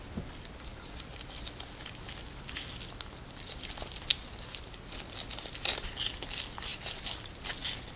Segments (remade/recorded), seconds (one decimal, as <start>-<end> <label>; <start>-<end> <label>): 0.0-4.1 recorded; 4.1-4.9 remade; 4.9-8.0 recorded